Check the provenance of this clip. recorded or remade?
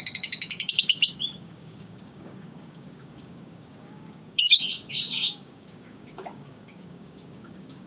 remade